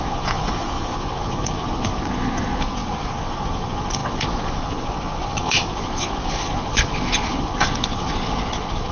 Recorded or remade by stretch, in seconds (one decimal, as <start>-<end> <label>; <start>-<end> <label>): 0.0-8.9 remade